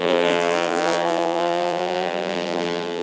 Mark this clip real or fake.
fake